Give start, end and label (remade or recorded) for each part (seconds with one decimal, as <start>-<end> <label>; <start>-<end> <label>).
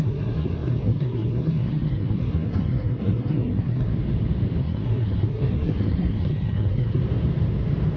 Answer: 0.0-3.9 remade; 3.9-4.6 recorded; 4.6-7.0 remade; 7.0-8.0 recorded